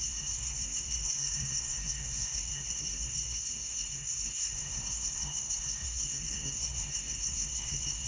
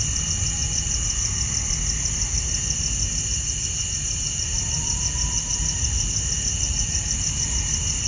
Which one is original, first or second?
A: second